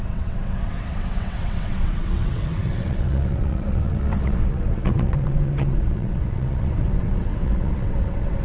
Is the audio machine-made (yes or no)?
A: yes